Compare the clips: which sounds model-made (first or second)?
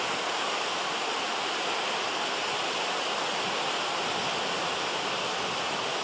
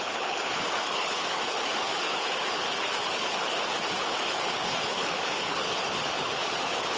second